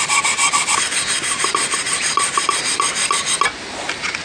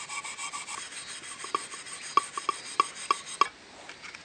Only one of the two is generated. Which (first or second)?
first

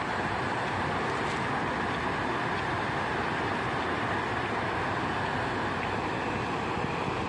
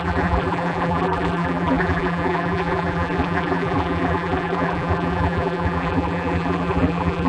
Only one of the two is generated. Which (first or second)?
second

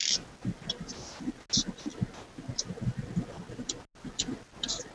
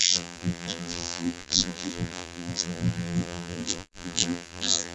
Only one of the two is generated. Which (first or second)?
second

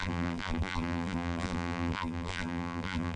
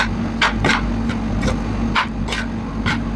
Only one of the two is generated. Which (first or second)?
first